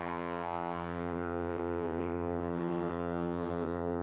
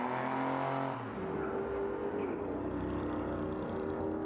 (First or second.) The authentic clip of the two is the second